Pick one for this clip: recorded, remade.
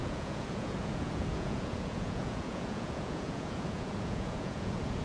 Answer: remade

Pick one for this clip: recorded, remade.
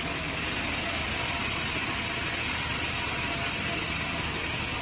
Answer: recorded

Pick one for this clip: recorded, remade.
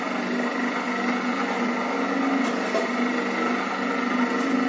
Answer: recorded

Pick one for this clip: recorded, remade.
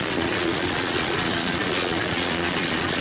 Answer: remade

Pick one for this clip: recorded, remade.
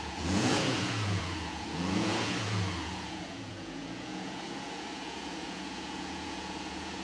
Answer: remade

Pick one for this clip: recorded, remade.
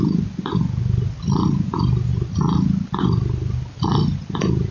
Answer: recorded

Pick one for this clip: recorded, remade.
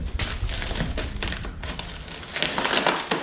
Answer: recorded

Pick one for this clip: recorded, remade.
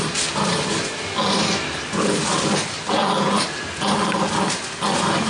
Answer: recorded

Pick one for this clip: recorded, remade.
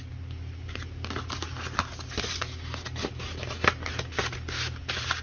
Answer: recorded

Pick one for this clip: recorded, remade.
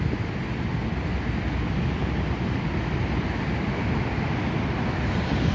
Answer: recorded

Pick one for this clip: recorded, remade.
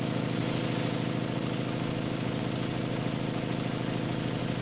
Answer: recorded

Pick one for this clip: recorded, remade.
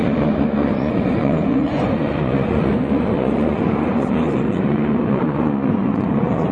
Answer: remade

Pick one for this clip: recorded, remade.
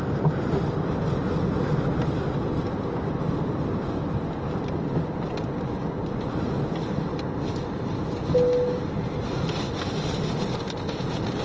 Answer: recorded